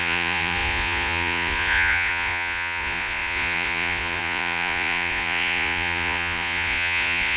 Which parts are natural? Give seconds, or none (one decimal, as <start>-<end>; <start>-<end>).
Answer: none